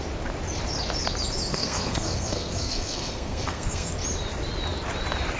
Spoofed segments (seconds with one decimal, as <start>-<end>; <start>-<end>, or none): 1.5-3.9